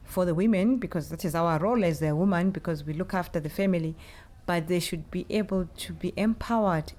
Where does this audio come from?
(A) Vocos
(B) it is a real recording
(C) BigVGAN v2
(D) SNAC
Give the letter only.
B